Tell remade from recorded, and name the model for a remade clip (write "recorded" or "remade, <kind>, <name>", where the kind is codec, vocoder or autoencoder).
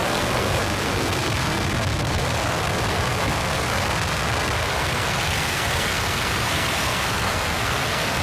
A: remade, codec, SNAC